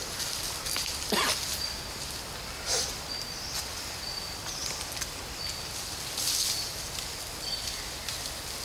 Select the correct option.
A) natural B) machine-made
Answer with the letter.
A